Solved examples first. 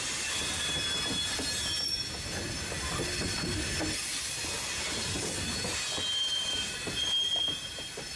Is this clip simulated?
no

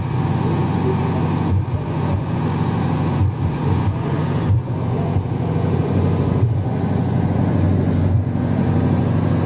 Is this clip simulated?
yes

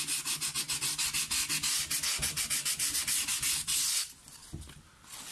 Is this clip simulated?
no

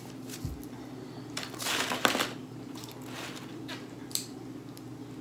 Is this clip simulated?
no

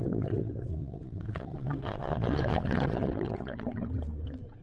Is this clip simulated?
yes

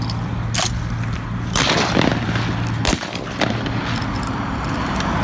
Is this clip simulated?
no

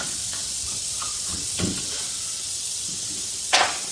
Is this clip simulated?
yes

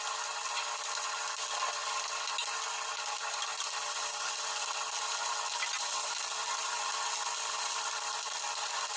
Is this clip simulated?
no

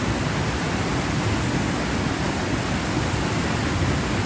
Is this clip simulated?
no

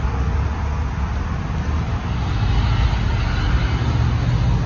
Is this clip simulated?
no